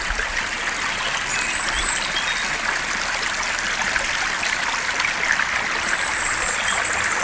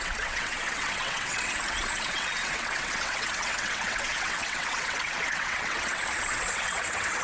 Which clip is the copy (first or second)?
second